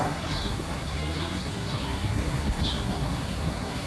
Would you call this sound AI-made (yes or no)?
yes